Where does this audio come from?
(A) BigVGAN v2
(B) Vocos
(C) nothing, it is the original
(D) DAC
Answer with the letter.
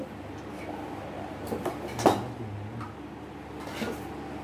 C